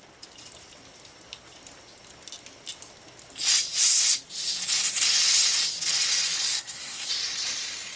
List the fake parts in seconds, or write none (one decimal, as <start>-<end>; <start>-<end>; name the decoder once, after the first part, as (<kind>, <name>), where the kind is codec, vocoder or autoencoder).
6.5-7.1 (codec, SNAC)